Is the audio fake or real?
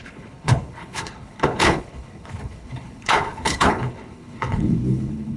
fake